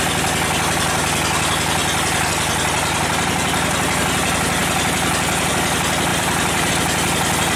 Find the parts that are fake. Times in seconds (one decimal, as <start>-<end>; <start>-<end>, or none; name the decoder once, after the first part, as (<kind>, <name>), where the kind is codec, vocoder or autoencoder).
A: 6.1-6.7 (vocoder, BigVGAN v2)